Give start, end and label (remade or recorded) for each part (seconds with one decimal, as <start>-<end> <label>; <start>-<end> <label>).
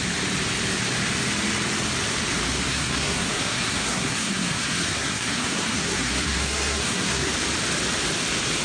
0.0-2.7 recorded; 2.7-7.3 remade; 7.3-8.6 recorded